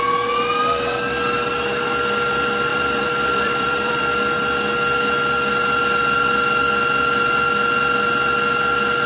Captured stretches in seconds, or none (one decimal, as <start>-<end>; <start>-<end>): 0.0-2.7; 4.0-9.1